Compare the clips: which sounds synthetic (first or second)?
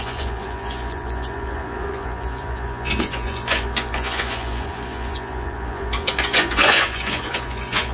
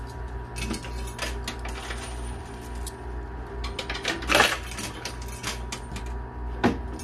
first